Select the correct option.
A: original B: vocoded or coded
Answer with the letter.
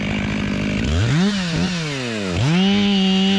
A